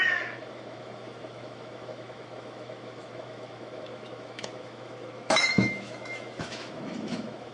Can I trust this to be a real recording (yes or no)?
no